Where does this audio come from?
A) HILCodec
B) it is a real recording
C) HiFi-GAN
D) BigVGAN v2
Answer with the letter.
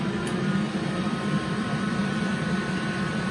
D